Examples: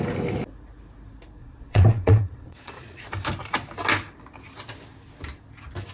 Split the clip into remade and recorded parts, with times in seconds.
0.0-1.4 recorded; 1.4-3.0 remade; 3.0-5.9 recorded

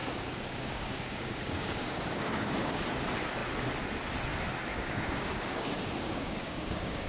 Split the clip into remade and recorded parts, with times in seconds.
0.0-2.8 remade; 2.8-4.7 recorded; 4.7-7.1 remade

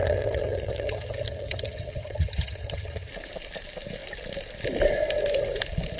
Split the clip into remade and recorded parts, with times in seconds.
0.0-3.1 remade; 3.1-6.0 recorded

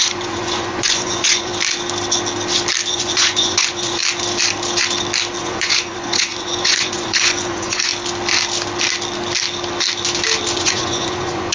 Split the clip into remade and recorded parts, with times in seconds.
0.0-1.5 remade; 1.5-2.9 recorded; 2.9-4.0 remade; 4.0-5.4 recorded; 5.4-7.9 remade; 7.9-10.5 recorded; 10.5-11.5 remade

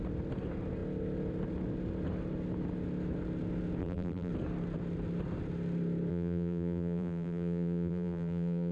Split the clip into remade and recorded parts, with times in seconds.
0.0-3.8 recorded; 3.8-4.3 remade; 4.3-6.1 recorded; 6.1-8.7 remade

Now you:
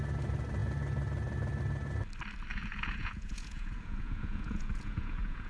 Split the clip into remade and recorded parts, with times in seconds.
0.0-2.5 recorded; 2.5-5.5 remade

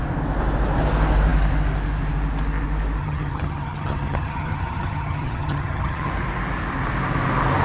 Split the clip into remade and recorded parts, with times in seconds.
0.0-3.0 recorded; 3.0-6.1 remade; 6.1-7.6 recorded

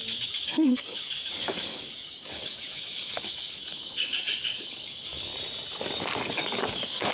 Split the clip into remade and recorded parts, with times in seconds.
0.0-5.3 remade; 5.3-6.3 recorded; 6.3-7.1 remade